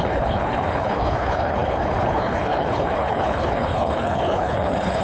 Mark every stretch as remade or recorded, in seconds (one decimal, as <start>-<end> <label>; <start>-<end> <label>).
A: 0.0-5.0 remade